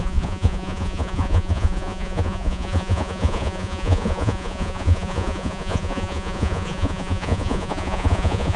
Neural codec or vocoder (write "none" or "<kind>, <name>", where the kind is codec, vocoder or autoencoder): vocoder, Vocos